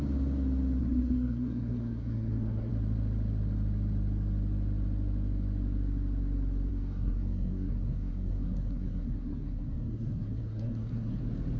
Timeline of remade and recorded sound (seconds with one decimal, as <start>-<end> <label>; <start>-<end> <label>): 0.0-0.8 recorded; 0.8-2.7 remade; 2.7-6.7 recorded; 6.7-11.2 remade; 11.2-11.6 recorded